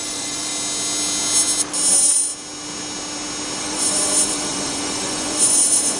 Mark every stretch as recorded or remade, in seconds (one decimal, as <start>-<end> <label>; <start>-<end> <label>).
0.0-0.5 remade; 0.5-1.9 recorded; 1.9-2.3 remade; 2.3-3.6 recorded; 3.6-6.0 remade